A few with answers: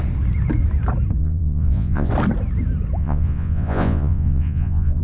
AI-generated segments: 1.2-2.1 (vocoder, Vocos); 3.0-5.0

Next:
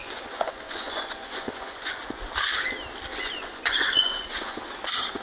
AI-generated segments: 0.0-2.0 (vocoder, Vocos); 3.1-4.6